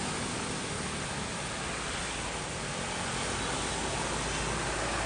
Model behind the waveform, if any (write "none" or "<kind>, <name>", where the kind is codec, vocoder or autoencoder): none